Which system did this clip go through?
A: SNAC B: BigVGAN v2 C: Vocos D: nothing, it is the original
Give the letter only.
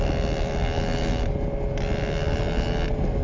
D